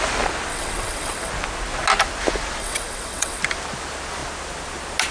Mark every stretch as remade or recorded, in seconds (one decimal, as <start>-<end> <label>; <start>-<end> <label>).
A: 0.0-0.5 recorded; 0.5-1.3 remade; 1.3-2.6 recorded; 2.6-3.4 remade; 3.4-5.1 recorded